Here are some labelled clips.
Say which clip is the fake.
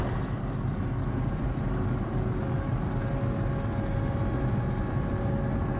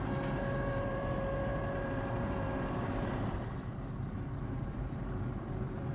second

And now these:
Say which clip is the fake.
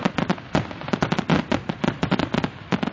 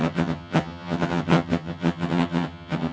second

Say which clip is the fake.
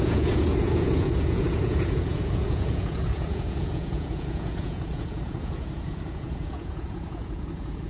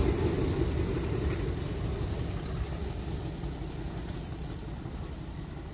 first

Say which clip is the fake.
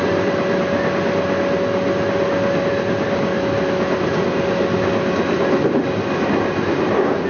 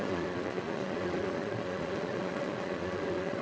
second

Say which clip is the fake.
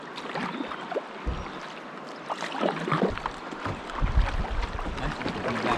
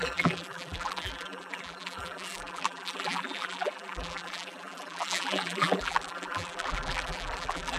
second